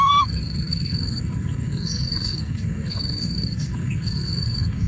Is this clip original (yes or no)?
no